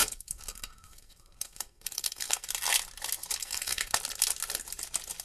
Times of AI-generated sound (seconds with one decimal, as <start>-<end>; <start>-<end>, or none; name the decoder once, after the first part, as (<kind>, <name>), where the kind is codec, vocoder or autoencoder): 0.0-2.5 (codec, SNAC); 3.4-4.0